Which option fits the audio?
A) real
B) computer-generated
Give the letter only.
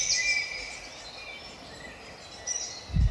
A